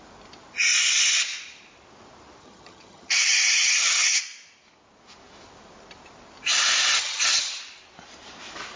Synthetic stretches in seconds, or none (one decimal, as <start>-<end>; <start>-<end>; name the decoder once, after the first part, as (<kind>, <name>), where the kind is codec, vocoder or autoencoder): 2.4-4.2 (vocoder, HiFi-GAN); 6.9-7.6